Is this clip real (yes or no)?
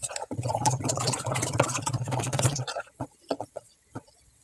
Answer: no